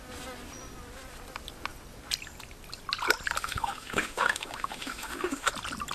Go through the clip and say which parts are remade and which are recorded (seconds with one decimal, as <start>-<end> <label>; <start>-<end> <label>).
0.0-3.4 recorded; 3.4-5.5 remade; 5.5-5.9 recorded